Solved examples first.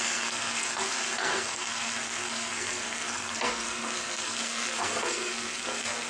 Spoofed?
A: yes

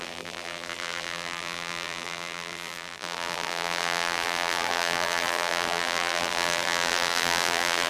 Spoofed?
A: yes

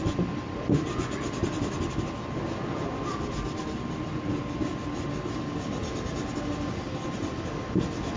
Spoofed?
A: no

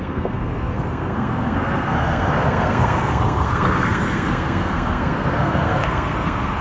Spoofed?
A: yes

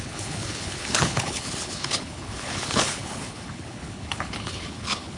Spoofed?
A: yes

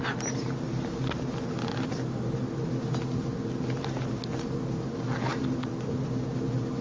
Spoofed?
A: no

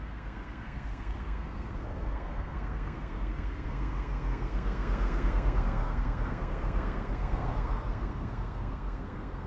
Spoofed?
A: yes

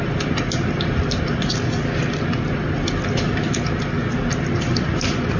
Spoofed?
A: no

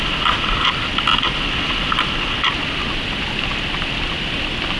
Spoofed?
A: no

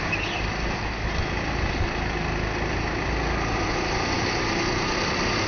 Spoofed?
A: no